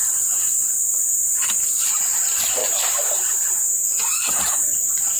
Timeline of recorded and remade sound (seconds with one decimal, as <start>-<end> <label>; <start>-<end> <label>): 0.0-1.1 remade; 1.1-2.6 recorded; 2.6-5.2 remade

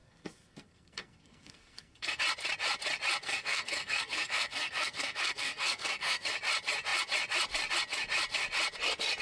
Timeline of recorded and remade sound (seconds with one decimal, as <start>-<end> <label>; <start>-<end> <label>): 0.0-2.2 remade; 2.2-3.2 recorded; 3.2-6.3 remade; 6.3-9.2 recorded